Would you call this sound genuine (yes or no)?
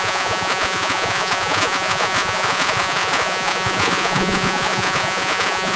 no